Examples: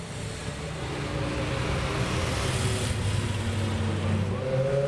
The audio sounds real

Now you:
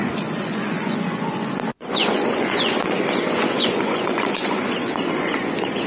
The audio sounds fake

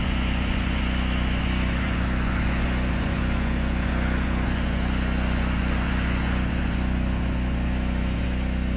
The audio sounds fake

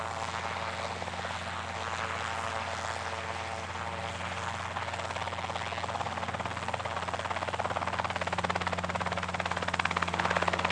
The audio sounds real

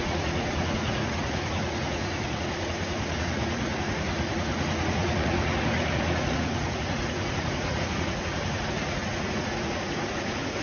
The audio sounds fake